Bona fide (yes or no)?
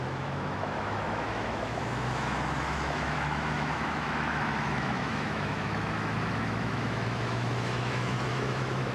no